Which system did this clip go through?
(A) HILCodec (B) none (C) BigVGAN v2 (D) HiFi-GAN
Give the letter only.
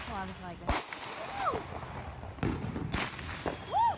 B